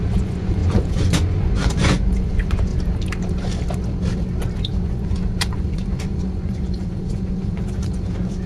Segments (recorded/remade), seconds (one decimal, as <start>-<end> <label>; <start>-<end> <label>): 0.0-2.7 remade; 2.7-4.6 recorded; 4.6-8.5 remade